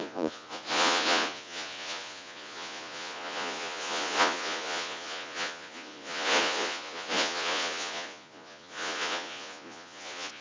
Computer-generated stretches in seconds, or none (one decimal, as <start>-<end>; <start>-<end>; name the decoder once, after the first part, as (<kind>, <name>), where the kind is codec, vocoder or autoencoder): 0.0-10.4 (vocoder, Vocos)